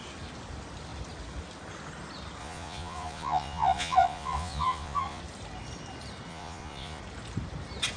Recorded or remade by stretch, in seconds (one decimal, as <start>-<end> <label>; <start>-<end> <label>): 0.0-2.4 recorded; 2.4-5.2 remade; 5.2-6.3 recorded; 6.3-7.0 remade; 7.0-8.0 recorded